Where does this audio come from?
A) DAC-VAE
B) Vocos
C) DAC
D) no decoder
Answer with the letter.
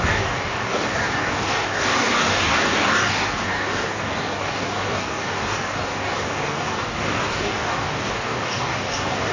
C